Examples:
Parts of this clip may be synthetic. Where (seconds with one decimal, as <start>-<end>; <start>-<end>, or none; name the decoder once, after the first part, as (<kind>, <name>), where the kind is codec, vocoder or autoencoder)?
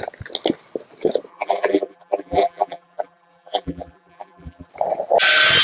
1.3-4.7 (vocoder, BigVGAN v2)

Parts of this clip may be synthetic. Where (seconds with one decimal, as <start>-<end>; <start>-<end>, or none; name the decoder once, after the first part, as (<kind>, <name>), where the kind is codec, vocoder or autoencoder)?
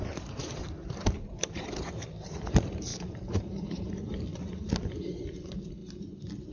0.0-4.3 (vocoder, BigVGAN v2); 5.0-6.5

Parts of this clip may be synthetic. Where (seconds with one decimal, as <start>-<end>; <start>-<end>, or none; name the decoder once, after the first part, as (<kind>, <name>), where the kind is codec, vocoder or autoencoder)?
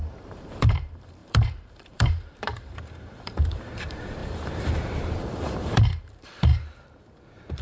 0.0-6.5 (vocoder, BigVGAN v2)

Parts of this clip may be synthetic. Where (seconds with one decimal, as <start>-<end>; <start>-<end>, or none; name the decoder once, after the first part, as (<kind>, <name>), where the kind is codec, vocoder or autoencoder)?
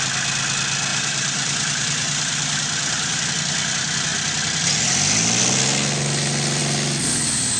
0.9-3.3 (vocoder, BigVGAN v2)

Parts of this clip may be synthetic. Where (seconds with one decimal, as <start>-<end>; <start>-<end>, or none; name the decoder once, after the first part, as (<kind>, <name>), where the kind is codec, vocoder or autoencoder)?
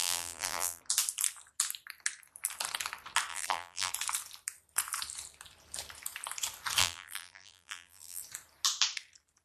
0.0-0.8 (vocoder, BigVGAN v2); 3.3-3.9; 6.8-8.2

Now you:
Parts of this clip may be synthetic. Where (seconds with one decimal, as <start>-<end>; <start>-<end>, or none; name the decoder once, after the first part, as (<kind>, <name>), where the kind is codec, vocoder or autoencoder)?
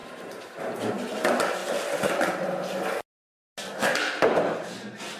0.0-0.6 (vocoder, BigVGAN v2)